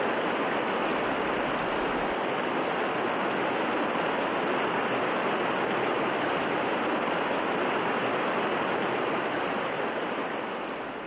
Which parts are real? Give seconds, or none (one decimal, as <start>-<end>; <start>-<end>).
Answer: 0.0-0.9; 1.5-5.9; 7.5-11.1